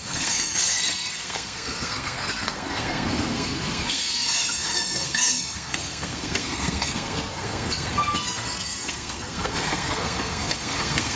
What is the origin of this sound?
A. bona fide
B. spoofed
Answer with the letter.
B